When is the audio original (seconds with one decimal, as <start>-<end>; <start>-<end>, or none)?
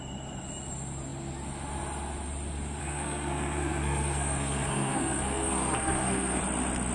0.0-2.8; 6.4-6.9